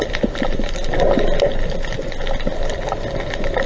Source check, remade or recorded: recorded